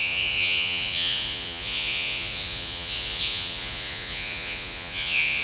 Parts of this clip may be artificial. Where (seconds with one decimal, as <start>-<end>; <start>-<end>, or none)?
0.0-5.4